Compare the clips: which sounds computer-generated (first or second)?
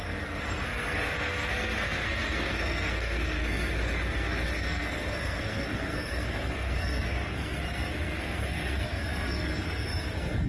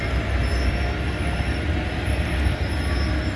first